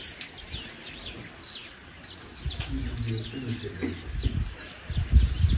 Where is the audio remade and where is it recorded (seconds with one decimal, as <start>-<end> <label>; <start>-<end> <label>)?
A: 0.0-5.6 recorded